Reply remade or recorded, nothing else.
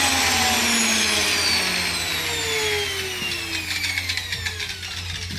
recorded